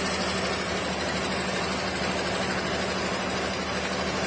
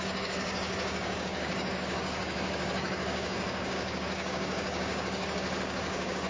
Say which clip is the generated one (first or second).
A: second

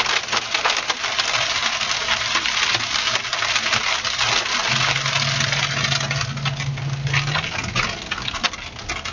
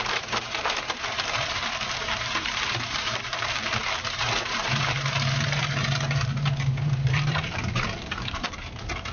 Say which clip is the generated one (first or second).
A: second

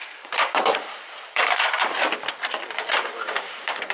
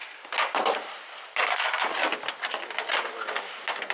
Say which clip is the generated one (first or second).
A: first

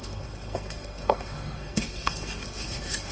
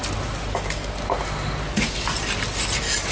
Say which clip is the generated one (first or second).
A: first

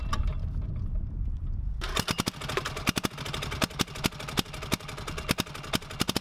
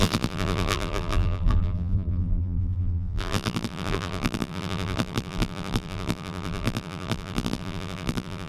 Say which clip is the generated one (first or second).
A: second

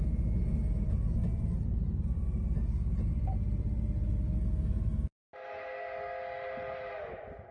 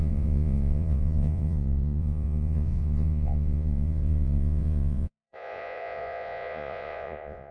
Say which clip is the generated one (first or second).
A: second